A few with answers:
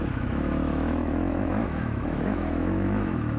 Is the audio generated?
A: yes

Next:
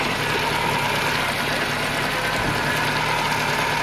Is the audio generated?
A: no